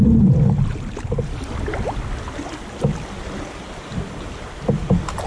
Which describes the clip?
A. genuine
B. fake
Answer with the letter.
A